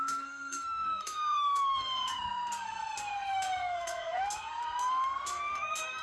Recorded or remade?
remade